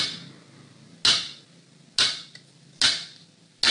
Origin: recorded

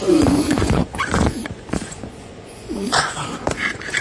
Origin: remade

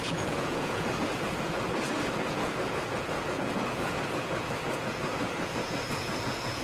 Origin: remade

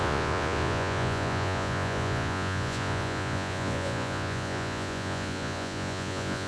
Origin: remade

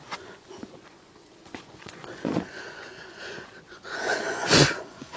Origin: remade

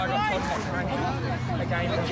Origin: recorded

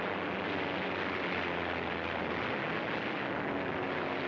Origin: recorded